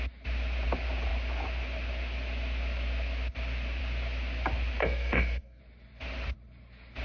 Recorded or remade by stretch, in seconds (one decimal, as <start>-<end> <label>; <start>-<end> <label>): 0.0-4.8 recorded; 4.8-5.6 remade; 5.6-7.0 recorded

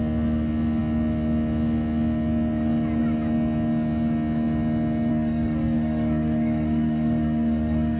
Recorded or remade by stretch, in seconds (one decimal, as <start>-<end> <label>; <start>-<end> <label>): 0.0-5.1 recorded; 5.1-8.0 remade

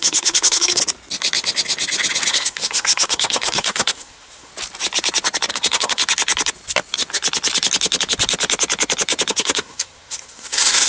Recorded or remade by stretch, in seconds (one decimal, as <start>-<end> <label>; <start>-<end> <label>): 0.0-0.8 remade; 0.8-2.3 recorded; 2.3-4.5 remade; 4.5-5.5 recorded; 5.5-6.0 remade; 6.0-9.3 recorded; 9.3-10.9 remade

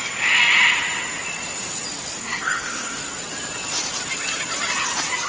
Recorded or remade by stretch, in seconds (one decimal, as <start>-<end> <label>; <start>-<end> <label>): 0.0-2.2 recorded; 2.2-3.0 remade; 3.0-5.3 recorded